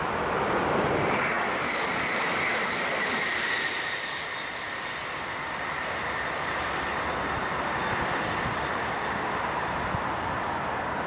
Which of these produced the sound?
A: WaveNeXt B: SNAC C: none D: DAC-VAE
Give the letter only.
C